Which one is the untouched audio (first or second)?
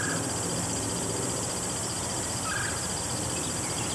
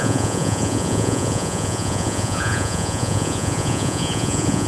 first